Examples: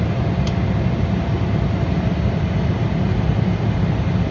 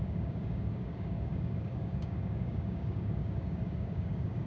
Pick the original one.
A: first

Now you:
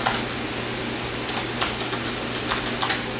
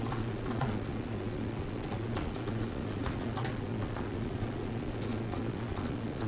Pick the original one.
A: first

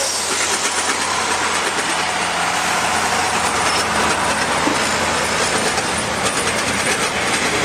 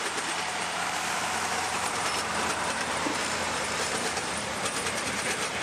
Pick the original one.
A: first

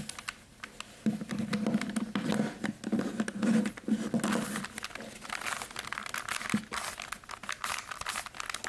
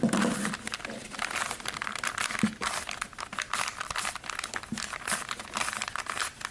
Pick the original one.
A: first